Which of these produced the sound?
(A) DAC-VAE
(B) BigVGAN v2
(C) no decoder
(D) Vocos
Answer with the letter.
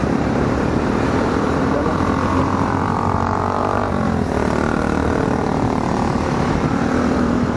B